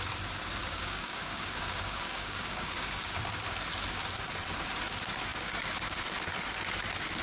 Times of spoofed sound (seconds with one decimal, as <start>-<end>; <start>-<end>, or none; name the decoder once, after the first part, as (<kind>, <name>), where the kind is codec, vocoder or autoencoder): 0.6-3.2 (codec, DAC); 5.3-6.0